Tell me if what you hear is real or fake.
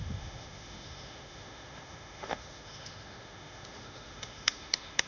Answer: fake